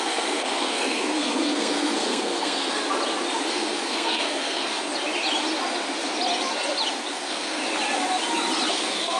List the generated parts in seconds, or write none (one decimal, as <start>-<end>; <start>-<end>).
0.0-2.8; 3.5-4.9; 7.1-7.6; 8.7-9.2